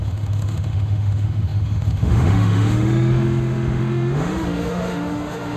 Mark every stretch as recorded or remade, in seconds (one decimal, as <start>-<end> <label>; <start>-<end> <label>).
0.0-5.6 remade